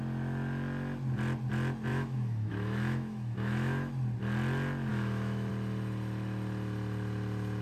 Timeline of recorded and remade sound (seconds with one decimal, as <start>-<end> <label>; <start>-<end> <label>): 0.0-1.9 recorded; 1.9-3.9 remade; 3.9-4.9 recorded; 4.9-5.5 remade; 5.5-7.6 recorded